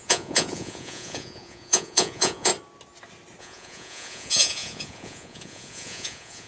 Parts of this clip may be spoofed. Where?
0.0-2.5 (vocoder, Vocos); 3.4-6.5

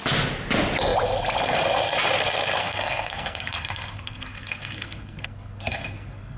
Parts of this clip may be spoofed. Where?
2.6-6.4 (codec, SNAC)